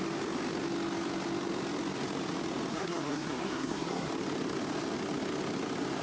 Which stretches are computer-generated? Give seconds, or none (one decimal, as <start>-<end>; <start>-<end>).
2.7-4.1